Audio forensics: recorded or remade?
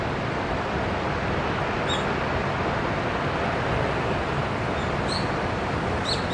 recorded